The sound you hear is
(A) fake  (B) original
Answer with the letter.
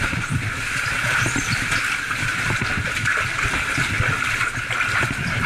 B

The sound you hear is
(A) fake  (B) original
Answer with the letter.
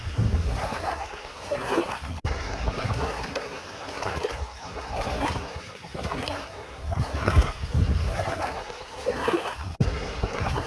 A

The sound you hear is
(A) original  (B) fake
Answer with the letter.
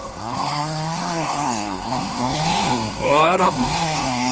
B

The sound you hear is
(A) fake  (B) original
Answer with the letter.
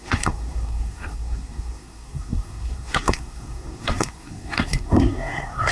A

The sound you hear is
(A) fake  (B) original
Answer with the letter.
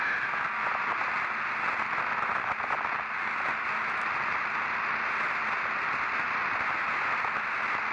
B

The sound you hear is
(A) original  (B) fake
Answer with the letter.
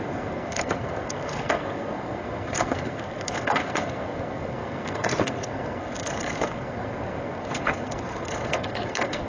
B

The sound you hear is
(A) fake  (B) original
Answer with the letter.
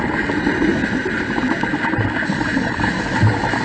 B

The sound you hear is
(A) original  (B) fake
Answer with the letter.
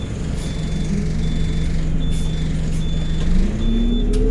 A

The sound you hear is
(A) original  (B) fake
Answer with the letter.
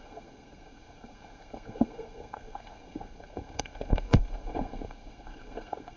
B